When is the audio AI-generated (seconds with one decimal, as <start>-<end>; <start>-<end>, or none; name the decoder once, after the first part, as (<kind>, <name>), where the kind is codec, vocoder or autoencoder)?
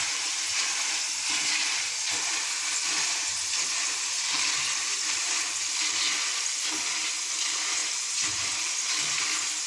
none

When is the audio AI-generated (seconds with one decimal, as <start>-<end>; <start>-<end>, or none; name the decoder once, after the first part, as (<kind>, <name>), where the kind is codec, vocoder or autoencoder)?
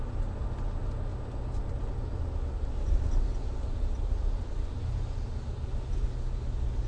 none